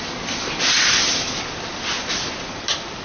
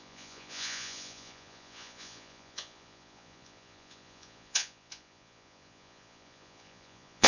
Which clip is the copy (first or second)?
second